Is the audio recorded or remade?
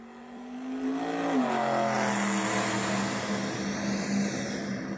recorded